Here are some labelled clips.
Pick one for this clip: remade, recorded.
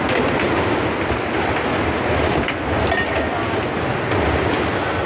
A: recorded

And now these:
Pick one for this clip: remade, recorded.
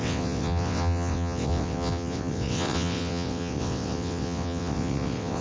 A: remade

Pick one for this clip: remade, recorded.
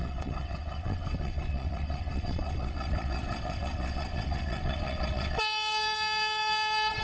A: remade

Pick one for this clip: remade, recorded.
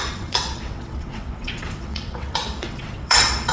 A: remade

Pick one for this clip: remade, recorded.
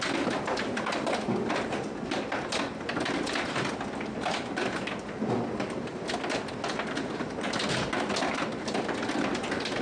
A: recorded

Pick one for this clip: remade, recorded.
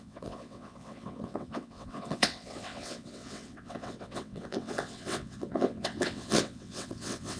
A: remade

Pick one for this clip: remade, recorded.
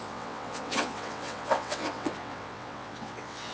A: remade